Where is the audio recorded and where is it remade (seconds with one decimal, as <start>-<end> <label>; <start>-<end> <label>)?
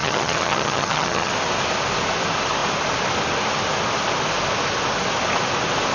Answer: 0.0-1.3 remade; 1.3-5.9 recorded